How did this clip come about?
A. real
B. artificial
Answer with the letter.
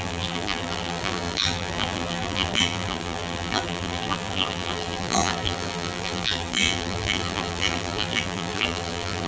B